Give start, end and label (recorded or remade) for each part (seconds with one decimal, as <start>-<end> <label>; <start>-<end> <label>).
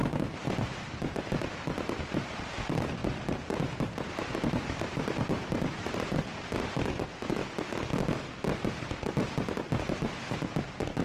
0.0-3.0 remade; 3.0-3.6 recorded; 3.6-7.4 remade; 7.4-9.8 recorded; 9.8-11.0 remade